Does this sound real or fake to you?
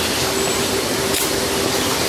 real